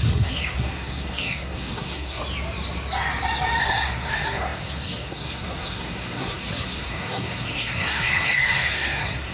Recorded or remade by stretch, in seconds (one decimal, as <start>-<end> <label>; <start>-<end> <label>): 0.0-2.2 remade; 2.2-3.6 recorded; 3.6-9.3 remade